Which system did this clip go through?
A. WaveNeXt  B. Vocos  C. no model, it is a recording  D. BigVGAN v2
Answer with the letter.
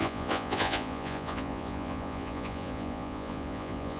B